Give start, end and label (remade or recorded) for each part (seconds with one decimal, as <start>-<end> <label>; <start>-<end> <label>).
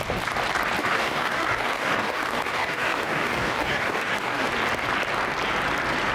0.0-0.8 recorded; 0.8-4.5 remade; 4.5-6.1 recorded